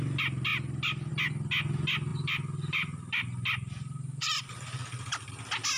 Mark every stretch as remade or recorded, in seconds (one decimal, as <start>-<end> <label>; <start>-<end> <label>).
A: 0.0-2.1 recorded; 2.1-5.3 remade; 5.3-5.8 recorded